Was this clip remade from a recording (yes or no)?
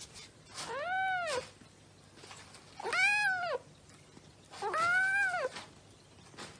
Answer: no